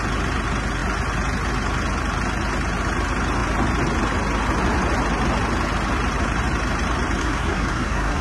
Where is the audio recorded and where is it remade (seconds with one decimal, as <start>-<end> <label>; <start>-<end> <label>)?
0.0-7.2 recorded; 7.2-8.2 remade